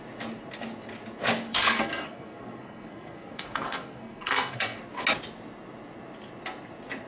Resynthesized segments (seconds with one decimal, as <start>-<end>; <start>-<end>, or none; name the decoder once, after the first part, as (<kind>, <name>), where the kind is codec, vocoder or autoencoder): 1.5-4.8 (codec, SNAC)